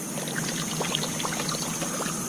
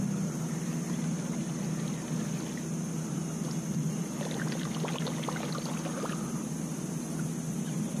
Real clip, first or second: second